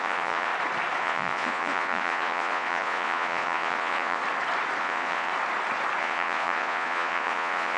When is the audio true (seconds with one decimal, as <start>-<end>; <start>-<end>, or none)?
0.5-1.0; 4.2-4.8; 5.3-6.0